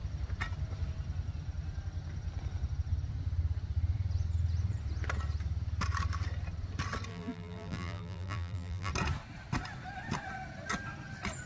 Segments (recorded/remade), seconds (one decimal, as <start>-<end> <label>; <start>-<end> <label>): 0.0-7.1 recorded; 7.1-8.9 remade; 8.9-11.5 recorded